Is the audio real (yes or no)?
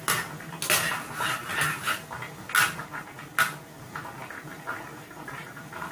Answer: yes